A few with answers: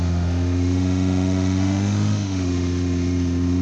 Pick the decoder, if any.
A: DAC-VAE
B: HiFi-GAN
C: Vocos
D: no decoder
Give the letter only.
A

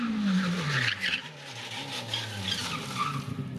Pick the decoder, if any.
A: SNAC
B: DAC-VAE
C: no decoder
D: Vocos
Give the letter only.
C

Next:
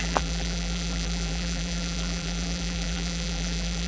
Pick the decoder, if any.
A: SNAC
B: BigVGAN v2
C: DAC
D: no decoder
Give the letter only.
B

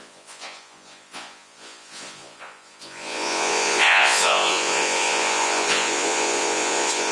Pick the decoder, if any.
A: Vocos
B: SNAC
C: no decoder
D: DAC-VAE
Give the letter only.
A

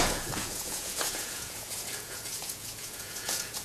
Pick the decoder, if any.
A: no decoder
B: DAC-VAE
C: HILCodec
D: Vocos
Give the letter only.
D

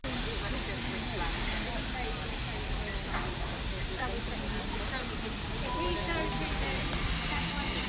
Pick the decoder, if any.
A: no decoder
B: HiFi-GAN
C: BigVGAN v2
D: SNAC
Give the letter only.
A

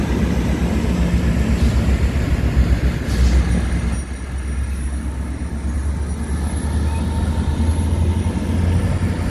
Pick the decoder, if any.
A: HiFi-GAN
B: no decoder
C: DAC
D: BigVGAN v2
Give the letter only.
B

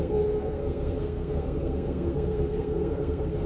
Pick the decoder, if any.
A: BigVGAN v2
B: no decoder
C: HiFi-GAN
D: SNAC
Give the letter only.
D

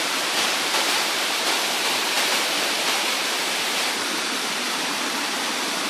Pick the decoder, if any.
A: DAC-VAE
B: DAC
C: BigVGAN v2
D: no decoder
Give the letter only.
C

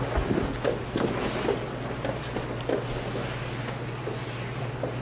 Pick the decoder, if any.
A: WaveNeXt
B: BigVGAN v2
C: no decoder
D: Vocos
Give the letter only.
C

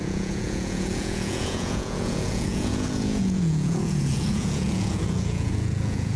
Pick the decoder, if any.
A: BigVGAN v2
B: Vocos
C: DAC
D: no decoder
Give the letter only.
B